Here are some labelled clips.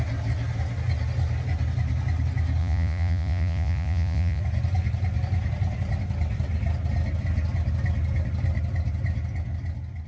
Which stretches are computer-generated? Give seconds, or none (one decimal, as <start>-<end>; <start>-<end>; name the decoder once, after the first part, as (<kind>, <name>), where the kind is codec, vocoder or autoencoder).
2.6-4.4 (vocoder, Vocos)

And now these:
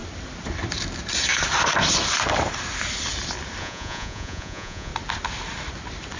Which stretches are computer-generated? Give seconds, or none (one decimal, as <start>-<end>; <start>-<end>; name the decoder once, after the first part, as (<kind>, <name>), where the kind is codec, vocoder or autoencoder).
3.6-4.9 (vocoder, Vocos)

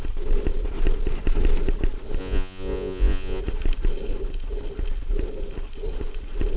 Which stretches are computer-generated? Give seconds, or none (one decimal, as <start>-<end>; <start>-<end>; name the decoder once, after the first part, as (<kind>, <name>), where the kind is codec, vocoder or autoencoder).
2.2-3.4 (vocoder, Vocos)

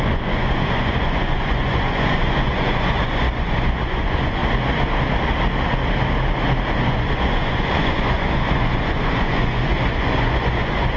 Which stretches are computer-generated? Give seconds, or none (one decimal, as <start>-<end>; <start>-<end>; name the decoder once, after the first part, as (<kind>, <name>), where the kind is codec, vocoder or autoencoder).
0.0-4.4 (vocoder, Vocos); 6.7-11.0